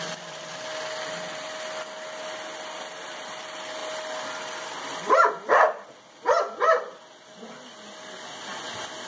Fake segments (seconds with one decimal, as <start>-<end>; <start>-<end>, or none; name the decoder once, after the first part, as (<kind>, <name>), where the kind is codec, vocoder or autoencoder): none